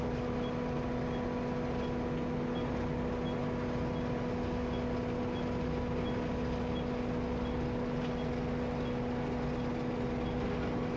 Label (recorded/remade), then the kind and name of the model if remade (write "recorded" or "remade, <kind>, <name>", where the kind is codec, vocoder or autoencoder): recorded